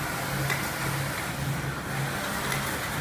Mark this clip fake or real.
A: real